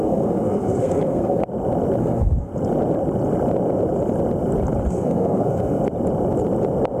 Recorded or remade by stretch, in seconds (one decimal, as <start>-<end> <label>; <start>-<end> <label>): 0.0-1.4 remade; 1.4-2.0 recorded; 2.0-2.5 remade; 2.5-4.9 recorded; 4.9-5.8 remade; 5.8-7.0 recorded